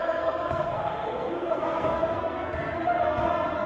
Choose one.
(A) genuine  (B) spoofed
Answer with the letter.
B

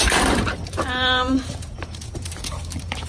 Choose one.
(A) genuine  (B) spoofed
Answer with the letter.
B